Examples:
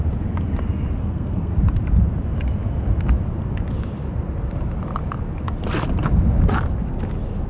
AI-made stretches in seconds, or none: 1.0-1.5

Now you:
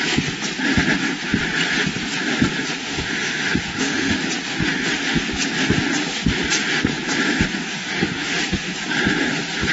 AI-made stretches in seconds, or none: 2.8-4.3; 7.7-8.4

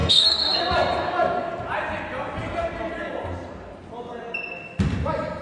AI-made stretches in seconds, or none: 0.0-0.6

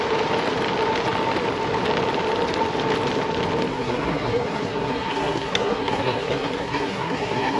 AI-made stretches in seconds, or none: 3.7-7.6

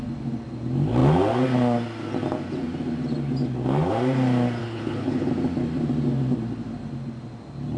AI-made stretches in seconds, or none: 4.6-5.3